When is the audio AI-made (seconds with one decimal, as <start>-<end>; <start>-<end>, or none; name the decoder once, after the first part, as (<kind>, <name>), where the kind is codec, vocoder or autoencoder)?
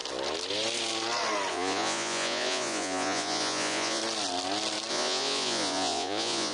1.5-4.0 (vocoder, Vocos); 4.9-6.5